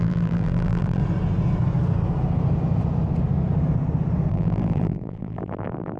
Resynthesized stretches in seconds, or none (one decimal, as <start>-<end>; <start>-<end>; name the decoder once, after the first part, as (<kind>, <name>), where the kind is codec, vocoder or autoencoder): 0.0-1.0 (vocoder, BigVGAN v2); 4.3-6.0

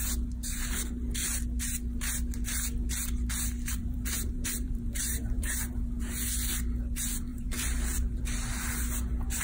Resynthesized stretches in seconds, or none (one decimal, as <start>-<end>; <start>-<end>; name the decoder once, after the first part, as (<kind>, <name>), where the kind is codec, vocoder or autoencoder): 3.8-6.1 (vocoder, BigVGAN v2); 7.3-8.2

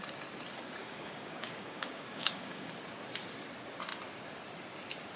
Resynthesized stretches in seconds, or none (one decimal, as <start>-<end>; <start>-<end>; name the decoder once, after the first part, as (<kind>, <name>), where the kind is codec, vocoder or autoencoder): 0.8-2.7 (codec, DAC)